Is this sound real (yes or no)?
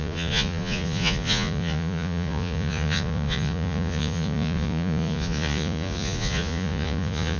no